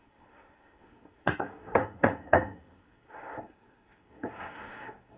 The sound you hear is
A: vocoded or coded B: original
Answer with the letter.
A